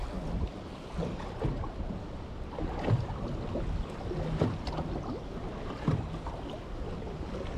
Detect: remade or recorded recorded